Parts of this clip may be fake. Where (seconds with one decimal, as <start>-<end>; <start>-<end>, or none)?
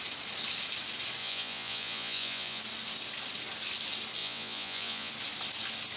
1.2-2.6; 4.2-5.1